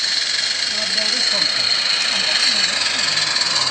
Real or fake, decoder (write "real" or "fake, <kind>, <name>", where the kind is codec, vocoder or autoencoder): real